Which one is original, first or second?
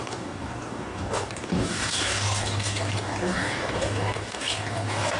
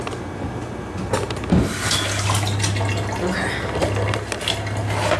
second